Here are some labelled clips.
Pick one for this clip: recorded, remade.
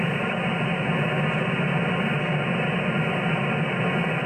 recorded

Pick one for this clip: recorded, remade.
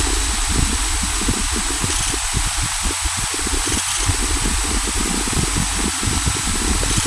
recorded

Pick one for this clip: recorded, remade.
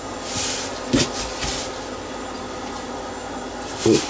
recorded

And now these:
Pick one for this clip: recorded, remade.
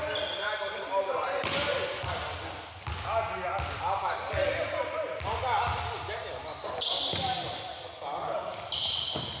recorded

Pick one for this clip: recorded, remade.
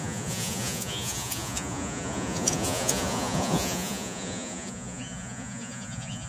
remade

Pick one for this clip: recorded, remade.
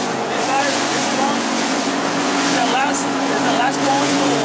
remade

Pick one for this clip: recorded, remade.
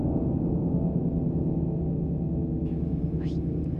recorded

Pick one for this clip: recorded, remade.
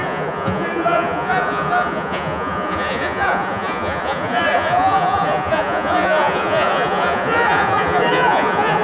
remade